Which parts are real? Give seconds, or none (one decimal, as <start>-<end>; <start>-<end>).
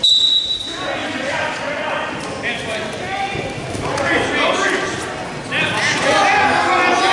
0.6-1.0; 4.0-7.1